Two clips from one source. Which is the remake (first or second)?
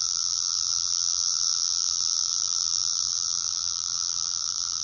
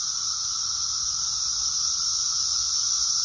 first